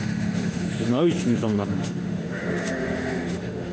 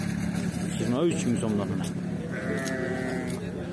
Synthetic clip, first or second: first